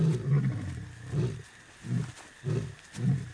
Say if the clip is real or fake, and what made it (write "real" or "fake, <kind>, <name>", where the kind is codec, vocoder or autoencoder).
real